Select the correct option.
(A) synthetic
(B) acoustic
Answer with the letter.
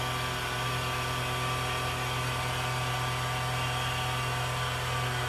B